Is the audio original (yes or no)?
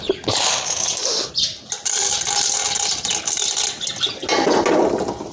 yes